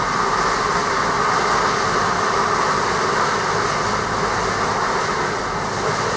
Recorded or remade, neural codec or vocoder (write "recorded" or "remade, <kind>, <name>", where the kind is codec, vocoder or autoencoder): recorded